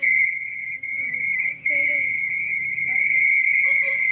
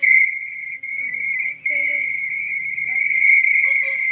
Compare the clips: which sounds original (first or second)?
second